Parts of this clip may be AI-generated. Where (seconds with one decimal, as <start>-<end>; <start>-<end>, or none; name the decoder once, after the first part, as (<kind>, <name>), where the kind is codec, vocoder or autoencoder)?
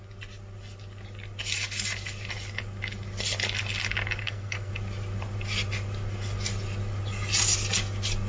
4.2-4.7 (codec, SNAC)